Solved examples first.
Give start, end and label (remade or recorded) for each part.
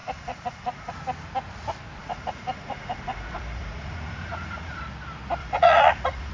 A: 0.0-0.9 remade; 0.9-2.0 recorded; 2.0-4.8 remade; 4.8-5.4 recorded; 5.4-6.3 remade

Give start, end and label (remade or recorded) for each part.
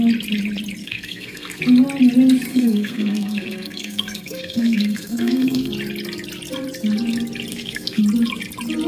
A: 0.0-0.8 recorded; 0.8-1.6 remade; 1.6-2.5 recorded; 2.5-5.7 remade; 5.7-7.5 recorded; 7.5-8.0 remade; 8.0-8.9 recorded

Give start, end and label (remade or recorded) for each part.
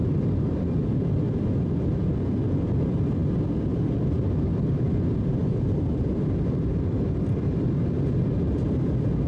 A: 0.0-1.2 remade; 1.2-3.2 recorded; 3.2-4.0 remade; 4.0-5.4 recorded; 5.4-7.4 remade; 7.4-9.3 recorded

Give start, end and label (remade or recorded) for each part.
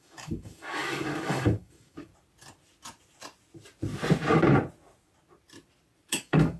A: 0.0-2.1 remade; 2.1-6.1 recorded; 6.1-6.6 remade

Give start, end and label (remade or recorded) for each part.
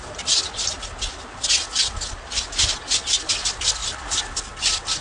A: 0.0-5.0 recorded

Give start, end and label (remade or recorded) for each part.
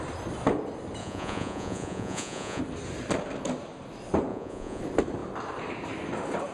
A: 0.0-1.0 recorded; 1.0-2.6 remade; 2.6-4.3 recorded; 4.3-4.8 remade; 4.8-6.5 recorded